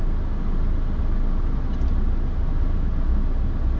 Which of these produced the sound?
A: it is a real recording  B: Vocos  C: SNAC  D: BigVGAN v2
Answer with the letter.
A